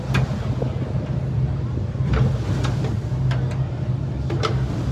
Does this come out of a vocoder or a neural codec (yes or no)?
no